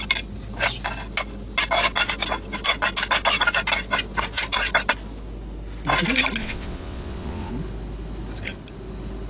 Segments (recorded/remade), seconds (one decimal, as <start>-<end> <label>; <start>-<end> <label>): 0.0-6.4 recorded; 6.4-7.5 remade; 7.5-9.3 recorded